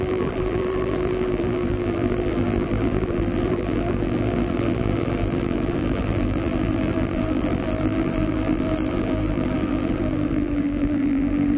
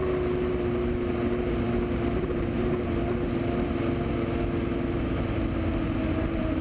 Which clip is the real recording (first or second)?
second